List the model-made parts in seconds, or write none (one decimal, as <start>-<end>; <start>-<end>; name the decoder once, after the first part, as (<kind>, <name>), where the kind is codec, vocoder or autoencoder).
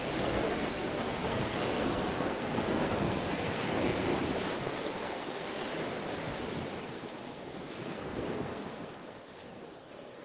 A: 0.0-4.1 (codec, SNAC); 4.6-5.7; 6.8-10.2